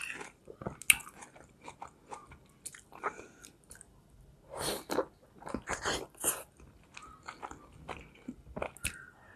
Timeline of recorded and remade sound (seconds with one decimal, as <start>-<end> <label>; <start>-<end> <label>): 0.0-9.4 recorded